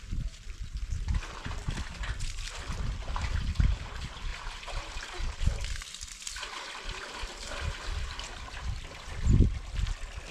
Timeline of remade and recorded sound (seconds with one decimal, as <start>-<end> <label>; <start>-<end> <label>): 0.0-4.3 recorded; 4.3-9.4 remade; 9.4-10.3 recorded